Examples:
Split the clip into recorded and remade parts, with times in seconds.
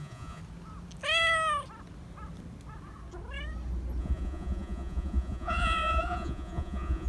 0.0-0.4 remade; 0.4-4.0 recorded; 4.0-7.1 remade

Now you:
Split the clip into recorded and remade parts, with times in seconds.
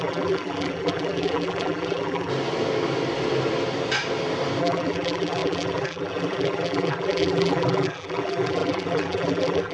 0.0-2.3 remade; 2.3-4.6 recorded; 4.6-9.7 remade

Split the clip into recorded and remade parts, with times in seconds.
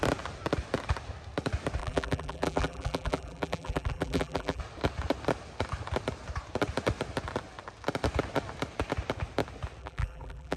0.0-1.8 recorded; 1.8-4.6 remade; 4.6-9.8 recorded; 9.8-10.6 remade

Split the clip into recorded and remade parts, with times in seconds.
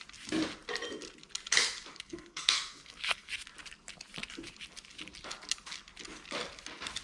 0.0-1.9 recorded; 1.9-3.3 remade; 3.3-7.0 recorded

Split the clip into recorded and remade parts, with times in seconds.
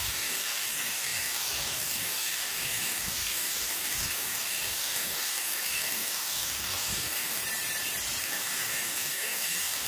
0.0-7.4 remade; 7.4-8.2 recorded; 8.2-9.9 remade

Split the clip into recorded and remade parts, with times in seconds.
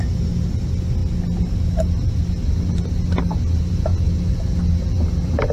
0.0-5.5 recorded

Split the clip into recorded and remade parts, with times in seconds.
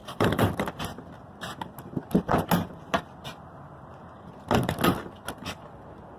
0.0-0.8 remade; 0.8-6.2 recorded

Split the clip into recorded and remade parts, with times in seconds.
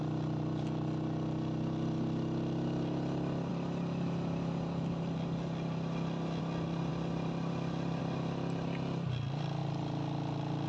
0.0-10.7 recorded